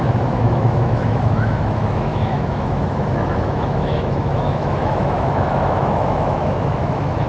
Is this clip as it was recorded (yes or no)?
no